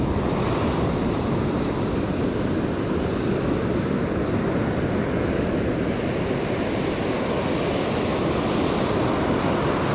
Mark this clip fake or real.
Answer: real